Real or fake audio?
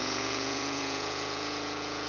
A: fake